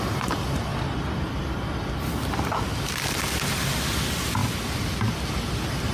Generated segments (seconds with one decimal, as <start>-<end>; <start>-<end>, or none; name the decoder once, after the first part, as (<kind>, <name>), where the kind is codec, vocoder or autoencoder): 0.7-1.9 (vocoder, BigVGAN v2); 2.7-3.9; 4.4-5.0